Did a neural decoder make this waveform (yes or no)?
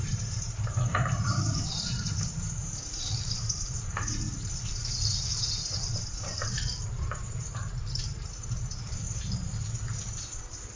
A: yes